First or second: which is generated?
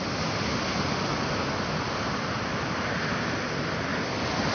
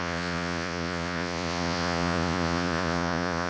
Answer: second